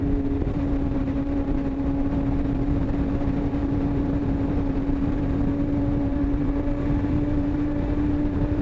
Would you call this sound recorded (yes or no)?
no